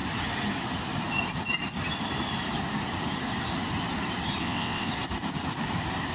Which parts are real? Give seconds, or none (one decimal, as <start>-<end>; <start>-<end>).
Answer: 0.0-4.4; 4.9-6.1